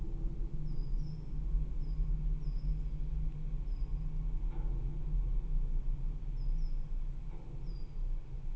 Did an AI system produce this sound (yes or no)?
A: no